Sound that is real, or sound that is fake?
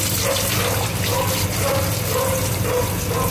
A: real